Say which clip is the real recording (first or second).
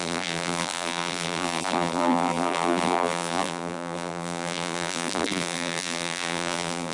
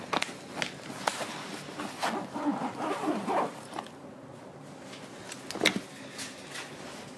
second